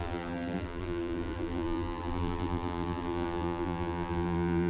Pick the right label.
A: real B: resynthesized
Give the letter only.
B